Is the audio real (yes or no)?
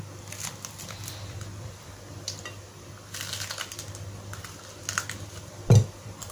yes